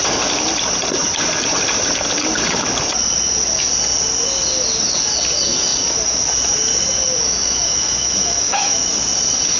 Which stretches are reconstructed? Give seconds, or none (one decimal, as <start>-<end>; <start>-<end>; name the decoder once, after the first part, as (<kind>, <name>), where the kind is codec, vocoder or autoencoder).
7.2-8.9 (autoencoder, DAC-VAE)